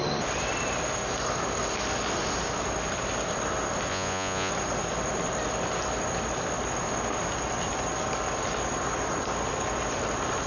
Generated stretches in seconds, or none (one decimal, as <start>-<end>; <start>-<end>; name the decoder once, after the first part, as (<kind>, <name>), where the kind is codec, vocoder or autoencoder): 3.9-4.5 (vocoder, Vocos)

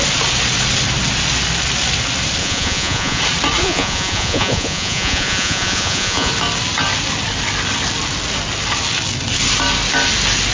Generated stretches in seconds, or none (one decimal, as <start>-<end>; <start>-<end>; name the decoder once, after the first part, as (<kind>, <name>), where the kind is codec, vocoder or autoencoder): 2.4-3.2 (vocoder, Vocos); 3.6-6.3

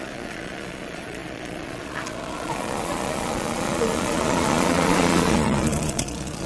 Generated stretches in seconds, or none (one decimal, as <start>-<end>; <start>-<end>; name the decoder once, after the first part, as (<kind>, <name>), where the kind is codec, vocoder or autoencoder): 0.0-6.5 (vocoder, Vocos)

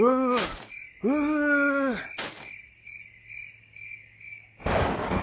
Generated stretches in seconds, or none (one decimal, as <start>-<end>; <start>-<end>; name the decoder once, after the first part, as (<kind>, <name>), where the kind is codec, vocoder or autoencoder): 0.0-0.5 (codec, DAC); 3.6-5.2

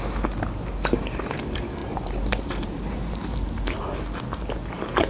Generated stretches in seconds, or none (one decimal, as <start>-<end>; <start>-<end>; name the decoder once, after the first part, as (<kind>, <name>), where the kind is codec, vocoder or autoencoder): 1.8-3.8 (vocoder, BigVGAN v2)

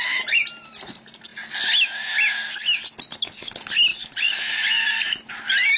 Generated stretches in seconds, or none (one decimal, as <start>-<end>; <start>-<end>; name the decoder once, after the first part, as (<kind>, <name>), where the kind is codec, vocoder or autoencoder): none

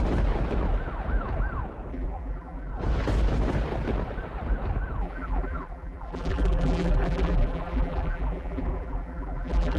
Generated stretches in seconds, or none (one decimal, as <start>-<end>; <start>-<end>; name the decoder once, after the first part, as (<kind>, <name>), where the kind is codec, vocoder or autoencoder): 1.9-2.7 (vocoder, BigVGAN v2); 5.0-9.8